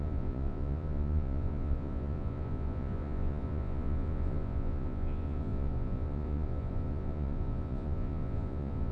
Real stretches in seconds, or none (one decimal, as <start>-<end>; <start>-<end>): none